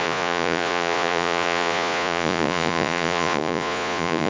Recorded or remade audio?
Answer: remade